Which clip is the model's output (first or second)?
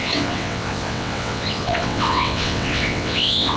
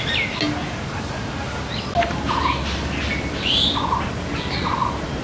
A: first